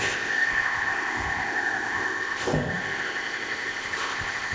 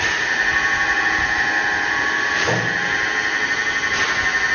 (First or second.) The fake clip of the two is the first